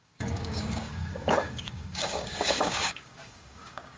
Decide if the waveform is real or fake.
fake